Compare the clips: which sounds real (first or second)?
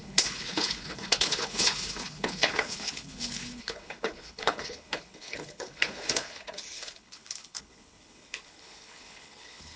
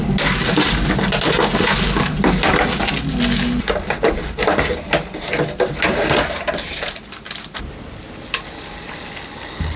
second